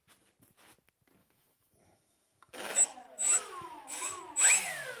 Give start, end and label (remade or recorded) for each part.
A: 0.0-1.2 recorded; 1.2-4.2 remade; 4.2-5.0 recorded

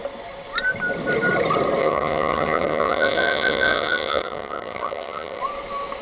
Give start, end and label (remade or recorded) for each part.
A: 0.0-1.8 recorded; 1.8-5.4 remade; 5.4-6.0 recorded

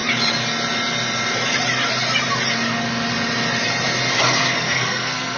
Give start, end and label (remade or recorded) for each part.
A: 0.0-4.2 recorded; 4.2-5.4 remade